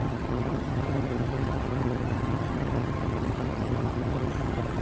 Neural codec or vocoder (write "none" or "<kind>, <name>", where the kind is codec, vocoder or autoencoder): vocoder, HiFi-GAN